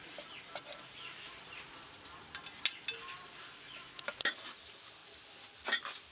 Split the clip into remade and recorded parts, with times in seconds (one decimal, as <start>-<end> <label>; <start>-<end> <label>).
0.0-6.1 recorded

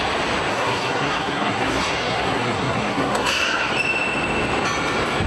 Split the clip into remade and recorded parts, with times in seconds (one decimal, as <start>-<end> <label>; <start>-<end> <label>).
0.0-0.5 recorded; 0.5-3.7 remade; 3.7-5.3 recorded

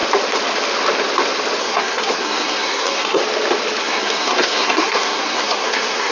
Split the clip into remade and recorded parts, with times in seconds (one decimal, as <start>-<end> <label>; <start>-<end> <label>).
0.0-1.6 recorded; 1.6-3.2 remade; 3.2-3.8 recorded; 3.8-6.1 remade

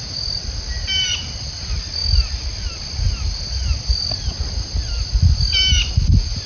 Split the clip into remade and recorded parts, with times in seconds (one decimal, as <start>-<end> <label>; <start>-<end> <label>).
0.0-6.5 recorded

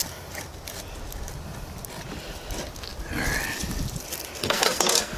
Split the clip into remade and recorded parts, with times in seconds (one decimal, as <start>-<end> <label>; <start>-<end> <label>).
0.0-4.4 recorded; 4.4-5.2 remade

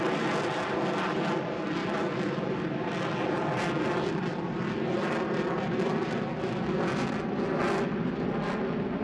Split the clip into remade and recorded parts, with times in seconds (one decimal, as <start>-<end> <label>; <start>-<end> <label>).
0.0-9.0 recorded

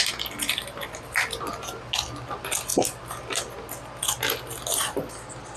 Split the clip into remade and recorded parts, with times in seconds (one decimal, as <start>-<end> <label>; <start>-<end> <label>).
0.0-5.6 recorded

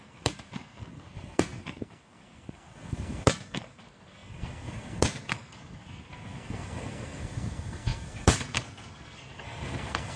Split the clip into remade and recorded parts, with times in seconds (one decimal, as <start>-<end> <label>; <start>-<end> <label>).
0.0-10.2 remade